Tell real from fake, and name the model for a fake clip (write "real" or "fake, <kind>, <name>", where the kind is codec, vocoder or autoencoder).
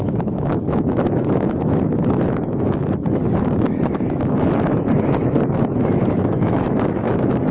fake, autoencoder, DAC-VAE